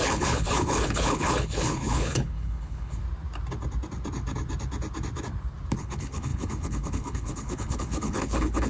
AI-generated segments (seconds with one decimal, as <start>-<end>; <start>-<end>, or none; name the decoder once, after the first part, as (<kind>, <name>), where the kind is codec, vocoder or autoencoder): 0.0-3.0 (codec, HILCodec); 5.8-8.7